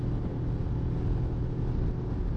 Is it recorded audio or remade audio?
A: recorded